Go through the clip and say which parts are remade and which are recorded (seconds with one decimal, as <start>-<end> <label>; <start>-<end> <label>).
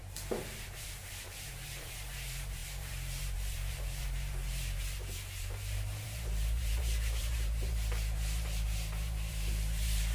0.0-10.1 remade